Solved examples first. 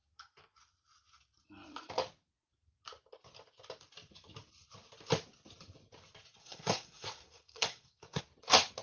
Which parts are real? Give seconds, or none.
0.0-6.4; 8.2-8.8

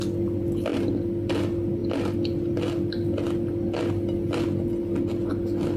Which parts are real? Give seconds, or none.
0.0-5.8

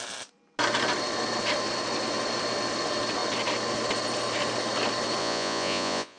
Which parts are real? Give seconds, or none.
0.0-5.2